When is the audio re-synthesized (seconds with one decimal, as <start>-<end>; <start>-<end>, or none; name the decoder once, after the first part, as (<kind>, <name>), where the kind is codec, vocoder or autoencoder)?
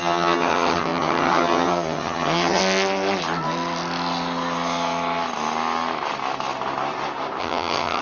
0.0-2.6 (vocoder, HiFi-GAN); 7.4-8.0